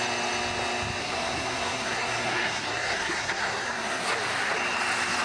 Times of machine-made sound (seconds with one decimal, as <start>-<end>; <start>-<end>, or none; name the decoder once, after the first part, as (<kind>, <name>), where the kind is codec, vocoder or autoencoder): 1.0-4.1 (codec, SNAC)